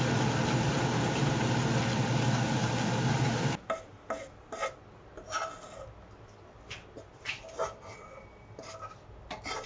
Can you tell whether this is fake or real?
real